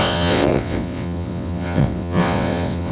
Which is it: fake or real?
fake